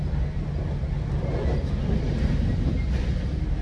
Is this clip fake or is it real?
real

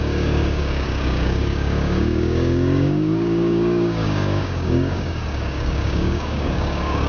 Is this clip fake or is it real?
fake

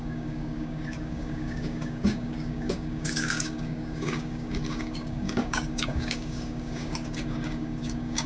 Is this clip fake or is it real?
fake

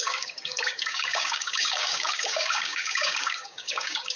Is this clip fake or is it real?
fake